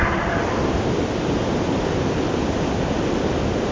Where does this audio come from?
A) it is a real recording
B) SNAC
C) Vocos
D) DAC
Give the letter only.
A